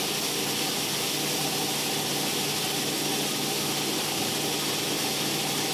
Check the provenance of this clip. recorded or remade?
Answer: recorded